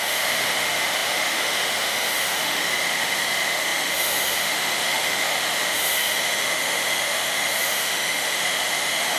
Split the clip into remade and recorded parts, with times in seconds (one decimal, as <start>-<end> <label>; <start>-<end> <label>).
0.0-9.2 remade